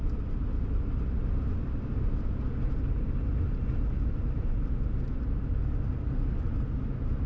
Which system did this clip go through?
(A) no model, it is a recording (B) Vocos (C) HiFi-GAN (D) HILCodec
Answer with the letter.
A